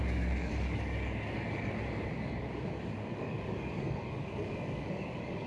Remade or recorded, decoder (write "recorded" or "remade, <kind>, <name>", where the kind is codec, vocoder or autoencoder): remade, codec, DAC